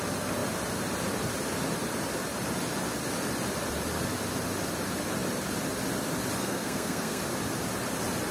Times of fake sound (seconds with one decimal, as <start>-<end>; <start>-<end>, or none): 6.4-7.2